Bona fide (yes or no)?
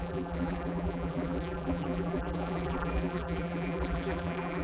no